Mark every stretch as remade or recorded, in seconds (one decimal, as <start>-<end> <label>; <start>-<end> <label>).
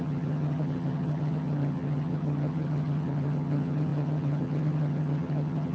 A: 0.0-5.7 remade